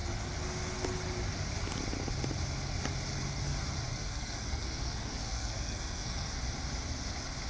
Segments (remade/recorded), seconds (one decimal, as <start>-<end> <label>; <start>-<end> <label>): 0.0-3.9 recorded; 3.9-6.4 remade; 6.4-7.5 recorded